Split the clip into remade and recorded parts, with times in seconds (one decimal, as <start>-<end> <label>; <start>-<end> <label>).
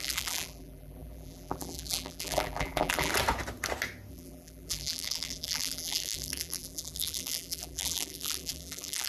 0.0-3.1 remade; 3.1-4.1 recorded; 4.1-9.1 remade